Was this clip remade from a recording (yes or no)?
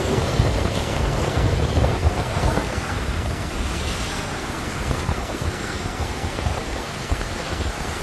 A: yes